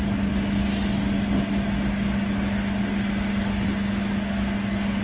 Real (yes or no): yes